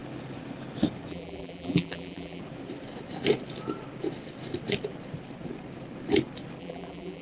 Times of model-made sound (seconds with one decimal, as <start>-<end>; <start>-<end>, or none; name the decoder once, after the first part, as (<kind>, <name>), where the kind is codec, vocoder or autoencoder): 1.1-2.4 (vocoder, BigVGAN v2); 6.6-7.2